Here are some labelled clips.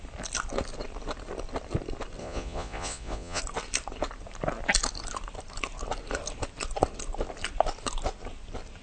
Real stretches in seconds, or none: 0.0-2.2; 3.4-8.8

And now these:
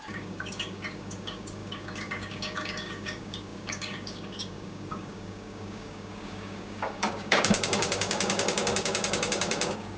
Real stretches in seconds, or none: none